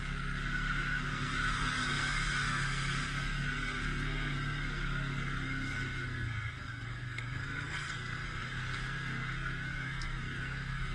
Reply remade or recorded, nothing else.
remade